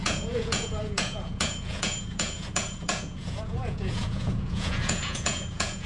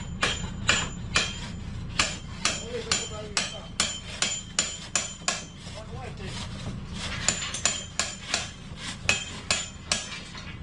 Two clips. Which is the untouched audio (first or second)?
second